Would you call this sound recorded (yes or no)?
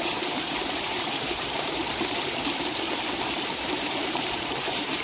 no